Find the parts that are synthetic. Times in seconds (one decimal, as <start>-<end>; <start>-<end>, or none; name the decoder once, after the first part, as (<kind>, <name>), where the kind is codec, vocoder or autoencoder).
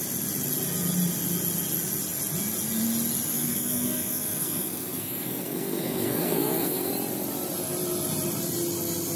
3.3-6.9 (codec, SNAC)